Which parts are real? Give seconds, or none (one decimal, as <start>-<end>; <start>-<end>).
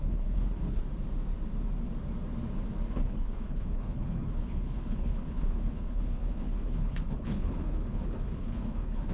0.8-2.9